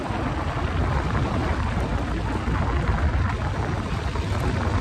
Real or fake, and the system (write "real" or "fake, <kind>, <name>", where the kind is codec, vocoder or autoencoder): real